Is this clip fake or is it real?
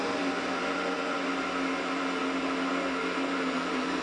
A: real